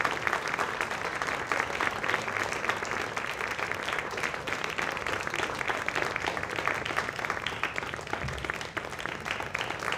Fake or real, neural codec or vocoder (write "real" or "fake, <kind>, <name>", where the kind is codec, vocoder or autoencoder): real